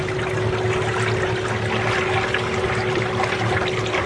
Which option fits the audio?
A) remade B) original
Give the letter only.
B